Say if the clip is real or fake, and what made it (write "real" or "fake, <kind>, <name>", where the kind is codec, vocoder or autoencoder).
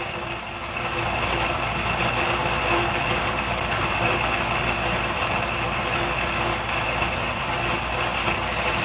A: real